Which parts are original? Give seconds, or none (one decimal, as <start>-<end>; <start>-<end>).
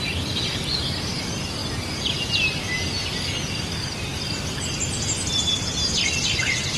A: 0.0-6.8